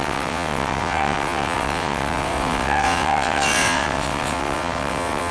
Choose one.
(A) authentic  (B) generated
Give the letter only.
B